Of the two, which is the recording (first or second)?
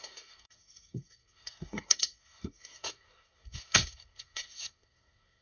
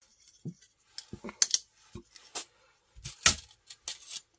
second